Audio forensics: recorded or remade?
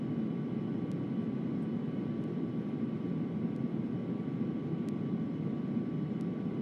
recorded